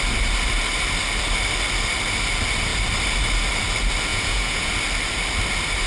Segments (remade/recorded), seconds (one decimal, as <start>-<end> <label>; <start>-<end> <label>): 0.0-4.1 recorded; 4.1-4.7 remade; 4.7-5.9 recorded